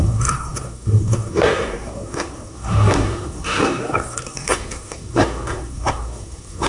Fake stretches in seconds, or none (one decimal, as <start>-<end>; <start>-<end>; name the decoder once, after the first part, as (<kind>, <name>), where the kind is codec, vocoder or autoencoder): 0.0-6.7 (codec, SNAC)